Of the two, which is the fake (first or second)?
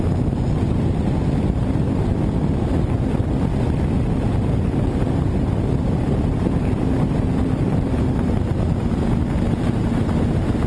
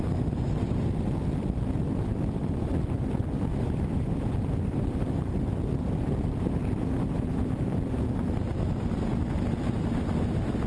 second